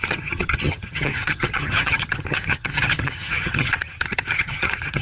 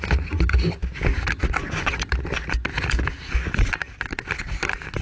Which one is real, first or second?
second